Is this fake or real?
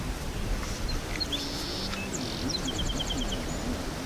real